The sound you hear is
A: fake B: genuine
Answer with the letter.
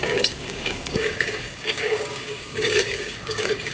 A